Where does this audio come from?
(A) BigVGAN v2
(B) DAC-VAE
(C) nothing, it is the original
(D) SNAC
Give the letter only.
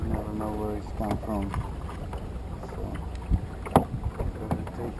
C